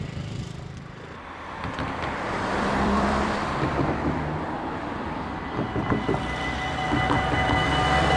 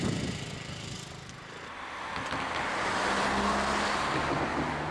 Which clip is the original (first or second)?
second